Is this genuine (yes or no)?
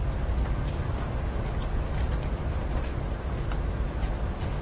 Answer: yes